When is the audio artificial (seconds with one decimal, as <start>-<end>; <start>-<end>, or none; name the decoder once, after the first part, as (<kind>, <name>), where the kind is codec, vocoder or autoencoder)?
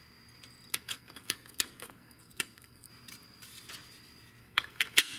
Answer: 0.7-2.9 (codec, SNAC); 4.4-5.2